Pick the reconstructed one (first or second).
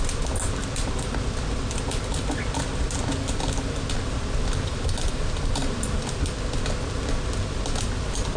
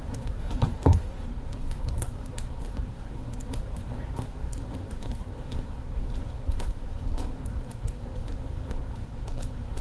second